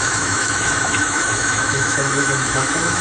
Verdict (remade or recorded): remade